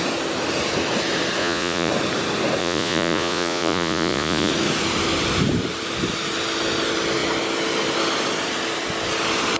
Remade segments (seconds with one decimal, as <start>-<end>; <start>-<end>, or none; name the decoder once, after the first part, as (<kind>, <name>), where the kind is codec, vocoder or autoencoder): 1.4-1.9 (vocoder, Vocos); 2.6-4.5